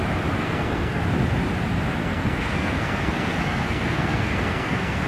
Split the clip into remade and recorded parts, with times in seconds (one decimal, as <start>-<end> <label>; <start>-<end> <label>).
0.0-0.4 recorded; 0.4-1.0 remade; 1.0-2.0 recorded; 2.0-5.1 remade